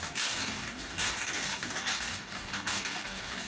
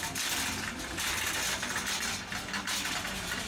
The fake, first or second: first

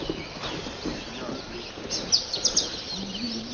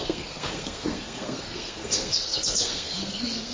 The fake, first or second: second